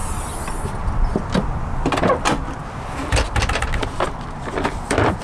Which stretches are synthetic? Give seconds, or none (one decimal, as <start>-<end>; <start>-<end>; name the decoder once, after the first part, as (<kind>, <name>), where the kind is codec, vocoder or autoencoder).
none